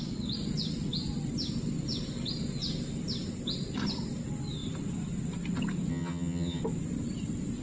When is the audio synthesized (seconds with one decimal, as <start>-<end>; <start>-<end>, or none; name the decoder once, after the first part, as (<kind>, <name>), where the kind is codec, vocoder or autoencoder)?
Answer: 5.9-6.6 (vocoder, HiFi-GAN)